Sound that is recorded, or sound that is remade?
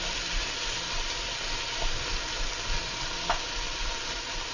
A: recorded